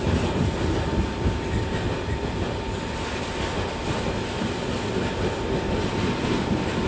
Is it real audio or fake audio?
real